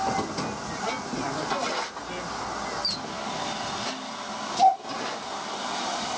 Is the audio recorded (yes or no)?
yes